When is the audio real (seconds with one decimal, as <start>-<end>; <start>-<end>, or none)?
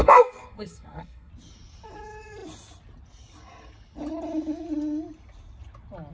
1.3-6.1